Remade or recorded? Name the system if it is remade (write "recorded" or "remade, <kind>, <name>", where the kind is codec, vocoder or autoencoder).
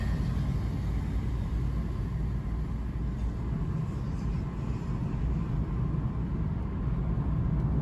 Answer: recorded